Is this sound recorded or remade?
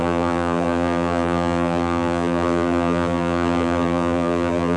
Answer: remade